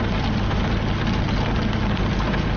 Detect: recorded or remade recorded